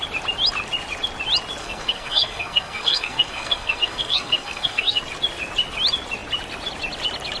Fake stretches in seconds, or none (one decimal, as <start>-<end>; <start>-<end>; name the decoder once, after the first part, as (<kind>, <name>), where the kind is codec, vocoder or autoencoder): 1.6-5.0 (codec, SNAC)